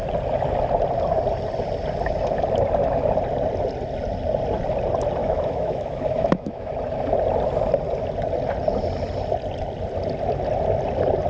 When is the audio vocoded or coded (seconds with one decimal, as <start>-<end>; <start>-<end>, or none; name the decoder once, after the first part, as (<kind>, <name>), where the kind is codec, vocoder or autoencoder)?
5.2-6.7 (autoencoder, DAC-VAE)